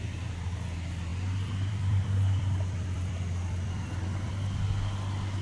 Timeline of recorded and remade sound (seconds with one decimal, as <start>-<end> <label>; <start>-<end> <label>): 0.0-1.1 recorded; 1.1-4.3 remade; 4.3-5.4 recorded